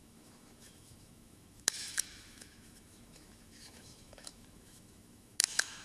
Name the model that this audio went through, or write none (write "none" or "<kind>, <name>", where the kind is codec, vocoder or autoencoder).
autoencoder, DAC-VAE